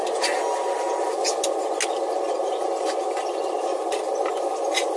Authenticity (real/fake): real